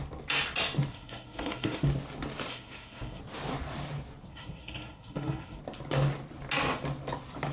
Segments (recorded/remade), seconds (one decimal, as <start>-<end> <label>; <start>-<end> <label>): 0.0-0.9 recorded; 0.9-1.8 remade; 1.8-2.5 recorded; 2.5-3.2 remade; 3.2-4.3 recorded; 4.3-5.6 remade; 5.6-7.5 recorded